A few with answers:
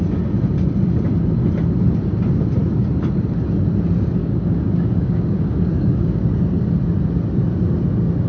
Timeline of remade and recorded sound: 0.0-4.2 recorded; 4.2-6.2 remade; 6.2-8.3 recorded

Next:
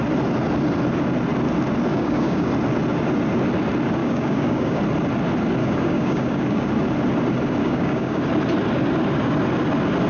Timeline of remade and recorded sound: 0.0-1.9 recorded; 1.9-2.5 remade; 2.5-4.0 recorded; 4.0-4.8 remade; 4.8-5.6 recorded; 5.6-6.7 remade; 6.7-7.6 recorded; 7.6-8.2 remade; 8.2-10.1 recorded

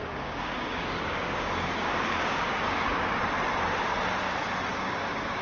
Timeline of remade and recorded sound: 0.0-3.2 remade; 3.2-4.7 recorded; 4.7-5.4 remade

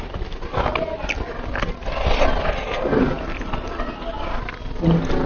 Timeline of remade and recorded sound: 0.0-5.3 recorded